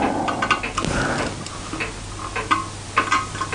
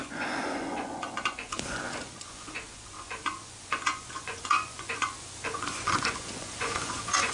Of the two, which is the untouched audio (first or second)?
first